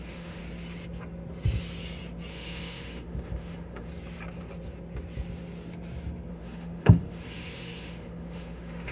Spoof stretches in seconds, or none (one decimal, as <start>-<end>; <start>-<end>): 0.0-0.4; 2.3-3.9; 6.3-8.9